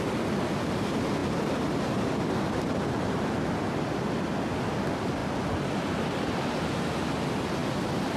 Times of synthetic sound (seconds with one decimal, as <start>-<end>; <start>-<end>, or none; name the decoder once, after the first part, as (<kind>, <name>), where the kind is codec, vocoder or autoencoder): none